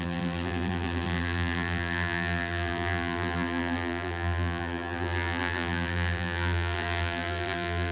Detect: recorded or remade remade